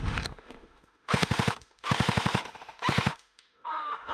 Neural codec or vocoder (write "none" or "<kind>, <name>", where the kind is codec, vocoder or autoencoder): autoencoder, DAC-VAE